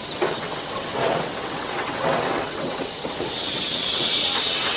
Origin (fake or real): fake